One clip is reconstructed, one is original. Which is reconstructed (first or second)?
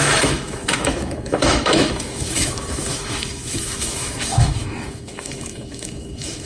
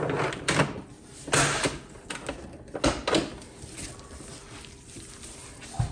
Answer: first